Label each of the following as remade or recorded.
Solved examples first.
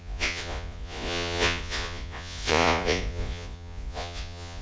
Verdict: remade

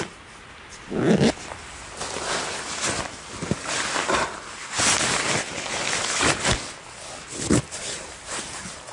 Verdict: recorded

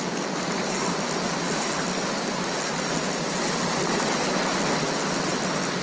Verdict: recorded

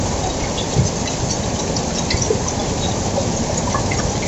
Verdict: recorded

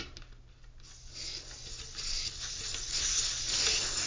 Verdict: recorded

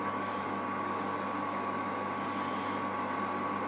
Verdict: recorded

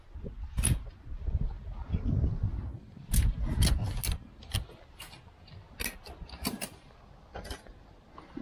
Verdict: recorded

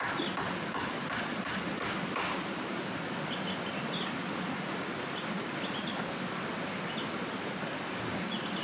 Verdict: recorded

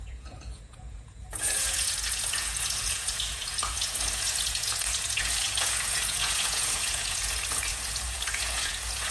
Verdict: remade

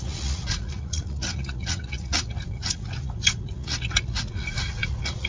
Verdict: remade